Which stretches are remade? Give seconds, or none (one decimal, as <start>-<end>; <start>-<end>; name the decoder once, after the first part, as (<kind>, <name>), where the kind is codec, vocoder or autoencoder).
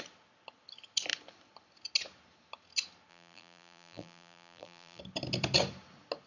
3.1-5.0 (vocoder, BigVGAN v2)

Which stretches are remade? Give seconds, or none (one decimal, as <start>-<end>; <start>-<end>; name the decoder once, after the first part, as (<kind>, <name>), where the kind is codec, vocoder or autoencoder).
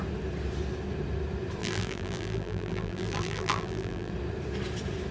1.6-4.1 (vocoder, BigVGAN v2)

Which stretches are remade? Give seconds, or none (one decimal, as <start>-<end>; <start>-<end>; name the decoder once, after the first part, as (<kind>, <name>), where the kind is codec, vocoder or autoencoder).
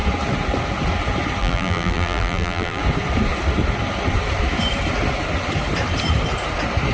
1.4-2.8 (vocoder, BigVGAN v2)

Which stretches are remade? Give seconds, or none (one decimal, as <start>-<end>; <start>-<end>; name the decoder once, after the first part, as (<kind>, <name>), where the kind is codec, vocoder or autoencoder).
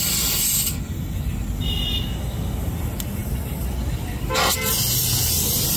none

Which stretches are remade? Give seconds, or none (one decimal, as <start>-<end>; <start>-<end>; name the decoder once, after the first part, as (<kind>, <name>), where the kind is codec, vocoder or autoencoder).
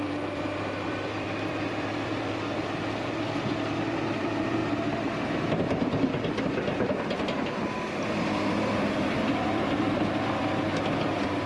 0.0-4.6 (vocoder, BigVGAN v2); 6.4-11.5